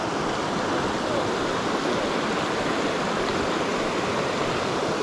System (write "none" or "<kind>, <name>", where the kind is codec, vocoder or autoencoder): none